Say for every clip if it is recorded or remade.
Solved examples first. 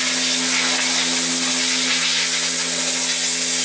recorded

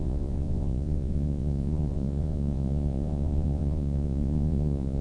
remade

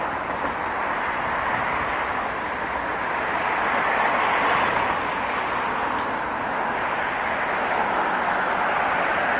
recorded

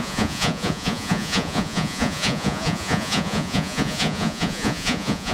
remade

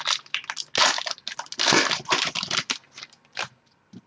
recorded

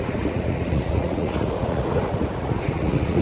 remade